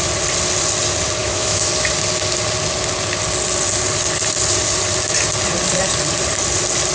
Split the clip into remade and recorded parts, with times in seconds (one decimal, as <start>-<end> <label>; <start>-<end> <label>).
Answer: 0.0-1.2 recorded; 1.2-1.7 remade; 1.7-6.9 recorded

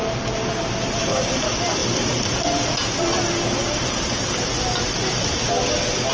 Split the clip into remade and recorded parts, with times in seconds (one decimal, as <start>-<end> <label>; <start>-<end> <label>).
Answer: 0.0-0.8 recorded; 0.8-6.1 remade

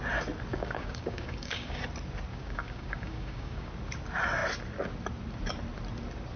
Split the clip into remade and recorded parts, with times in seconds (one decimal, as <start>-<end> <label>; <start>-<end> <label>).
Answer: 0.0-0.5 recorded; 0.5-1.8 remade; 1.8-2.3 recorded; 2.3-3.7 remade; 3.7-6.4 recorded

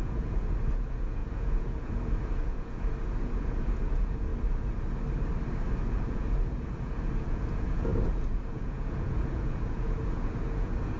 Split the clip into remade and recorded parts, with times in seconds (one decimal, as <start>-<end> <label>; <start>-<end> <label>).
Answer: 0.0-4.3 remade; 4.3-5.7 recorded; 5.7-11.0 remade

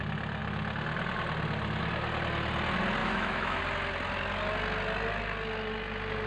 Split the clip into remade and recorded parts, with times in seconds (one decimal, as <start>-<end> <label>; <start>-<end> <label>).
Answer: 0.0-3.0 recorded; 3.0-3.6 remade; 3.6-6.3 recorded

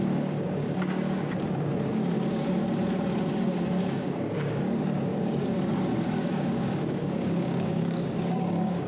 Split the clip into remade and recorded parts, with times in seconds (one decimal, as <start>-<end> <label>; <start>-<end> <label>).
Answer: 0.0-2.6 remade; 2.6-3.3 recorded; 3.3-8.9 remade

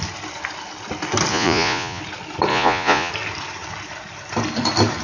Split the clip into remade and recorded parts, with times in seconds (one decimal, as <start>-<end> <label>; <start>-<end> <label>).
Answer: 0.0-1.3 recorded; 1.3-2.0 remade; 2.0-2.5 recorded; 2.5-3.1 remade; 3.1-5.0 recorded